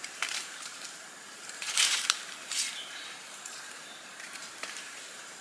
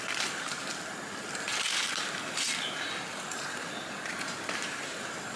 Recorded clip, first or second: second